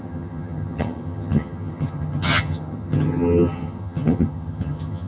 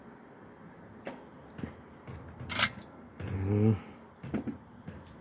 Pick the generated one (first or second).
first